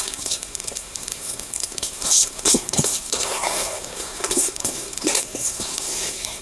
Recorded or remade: remade